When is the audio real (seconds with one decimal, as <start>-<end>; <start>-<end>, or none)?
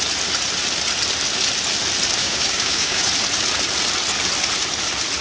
0.0-2.2; 3.0-5.2